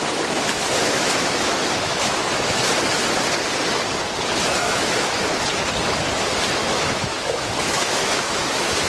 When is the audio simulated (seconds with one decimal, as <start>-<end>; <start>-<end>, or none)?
0.8-2.6; 4.4-5.1; 6.6-8.9